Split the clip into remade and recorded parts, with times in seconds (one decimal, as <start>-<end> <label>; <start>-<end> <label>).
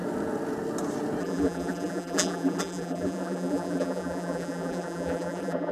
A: 0.0-1.2 recorded; 1.2-5.7 remade